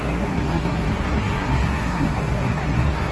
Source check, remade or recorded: remade